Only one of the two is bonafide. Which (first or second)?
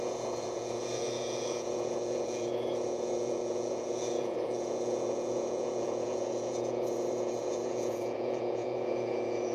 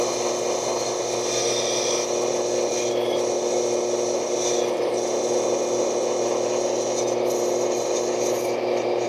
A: second